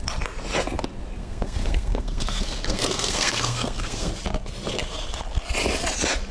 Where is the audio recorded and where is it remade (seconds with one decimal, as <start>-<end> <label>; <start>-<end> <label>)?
0.0-1.2 recorded; 1.2-4.1 remade; 4.1-6.3 recorded